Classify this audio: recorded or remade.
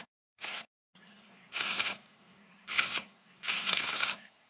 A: remade